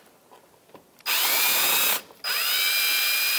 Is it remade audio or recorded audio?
recorded